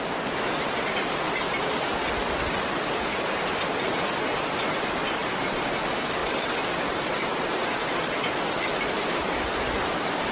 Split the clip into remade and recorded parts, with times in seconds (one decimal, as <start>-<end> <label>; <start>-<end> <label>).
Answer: 0.0-5.2 recorded; 5.2-5.8 remade; 5.8-6.2 recorded; 6.2-9.8 remade; 9.8-10.3 recorded